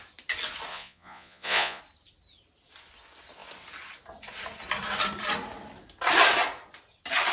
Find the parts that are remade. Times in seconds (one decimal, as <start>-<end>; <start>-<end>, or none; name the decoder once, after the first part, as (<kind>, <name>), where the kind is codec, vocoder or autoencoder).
0.7-1.8 (vocoder, Vocos)